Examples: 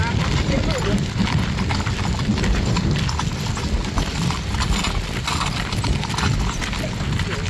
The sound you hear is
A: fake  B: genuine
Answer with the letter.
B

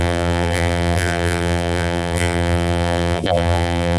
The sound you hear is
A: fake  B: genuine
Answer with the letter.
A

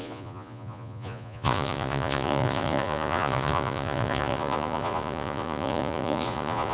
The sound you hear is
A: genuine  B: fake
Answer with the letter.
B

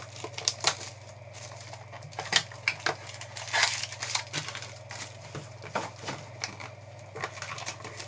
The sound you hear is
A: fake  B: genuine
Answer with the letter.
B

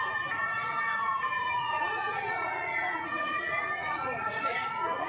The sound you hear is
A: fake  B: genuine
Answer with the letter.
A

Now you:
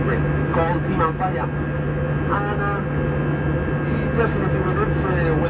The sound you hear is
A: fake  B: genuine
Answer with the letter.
B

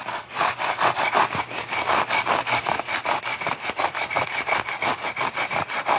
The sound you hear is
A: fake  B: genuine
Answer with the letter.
B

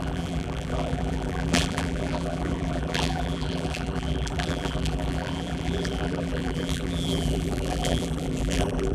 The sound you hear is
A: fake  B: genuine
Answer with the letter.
A